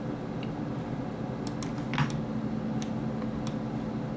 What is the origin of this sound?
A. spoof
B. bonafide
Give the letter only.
B